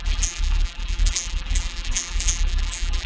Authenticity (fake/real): fake